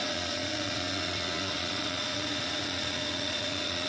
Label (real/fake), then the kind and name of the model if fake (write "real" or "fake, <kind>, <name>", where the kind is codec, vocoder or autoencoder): fake, vocoder, Vocos